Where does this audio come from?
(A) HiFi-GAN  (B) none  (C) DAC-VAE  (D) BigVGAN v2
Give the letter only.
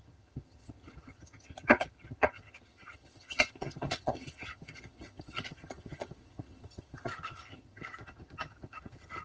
A